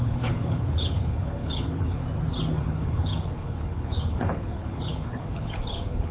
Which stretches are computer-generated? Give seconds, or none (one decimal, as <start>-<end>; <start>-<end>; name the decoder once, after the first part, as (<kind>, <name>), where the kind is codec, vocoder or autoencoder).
0.0-2.0 (codec, HILCodec); 2.6-6.1